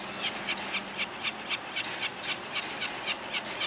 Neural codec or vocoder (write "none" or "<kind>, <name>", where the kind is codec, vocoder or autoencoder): none